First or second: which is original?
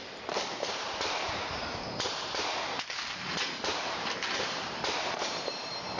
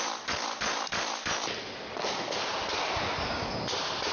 second